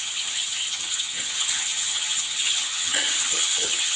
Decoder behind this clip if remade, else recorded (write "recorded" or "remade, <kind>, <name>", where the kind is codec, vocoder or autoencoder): remade, vocoder, HiFi-GAN